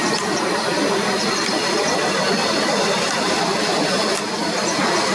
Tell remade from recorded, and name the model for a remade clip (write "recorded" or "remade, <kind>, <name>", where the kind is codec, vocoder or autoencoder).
remade, vocoder, BigVGAN v2